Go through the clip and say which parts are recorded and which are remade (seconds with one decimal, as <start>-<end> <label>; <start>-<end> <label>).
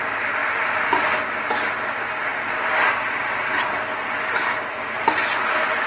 0.0-5.9 recorded